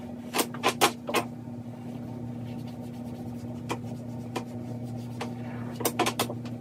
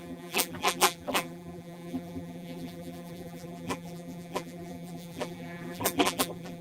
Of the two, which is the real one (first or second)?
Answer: first